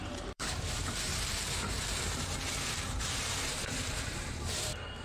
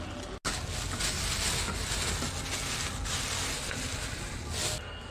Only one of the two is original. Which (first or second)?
second